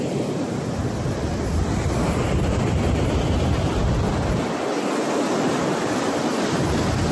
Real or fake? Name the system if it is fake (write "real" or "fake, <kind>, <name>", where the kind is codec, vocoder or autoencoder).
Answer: real